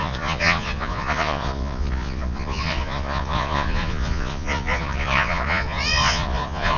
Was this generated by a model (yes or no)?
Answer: yes